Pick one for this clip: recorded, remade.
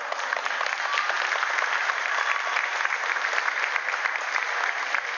recorded